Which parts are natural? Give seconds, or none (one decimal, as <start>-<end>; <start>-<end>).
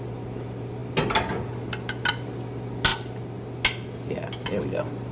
0.0-5.1